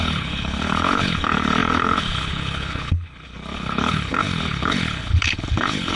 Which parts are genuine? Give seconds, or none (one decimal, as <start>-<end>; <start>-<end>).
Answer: none